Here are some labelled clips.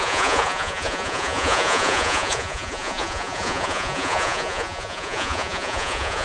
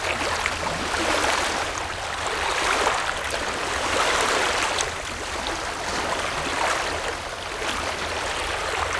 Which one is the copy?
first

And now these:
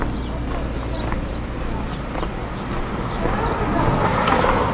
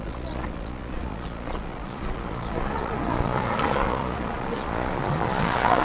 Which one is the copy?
second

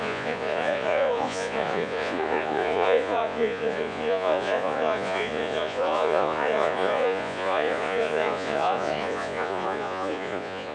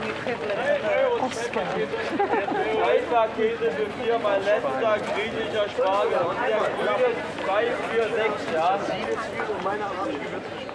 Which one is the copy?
first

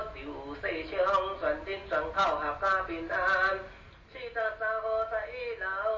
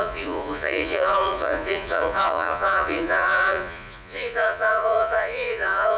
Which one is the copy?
second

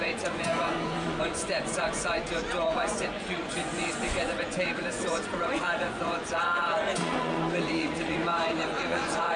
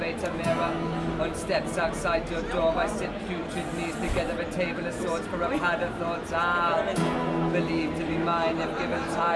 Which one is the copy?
first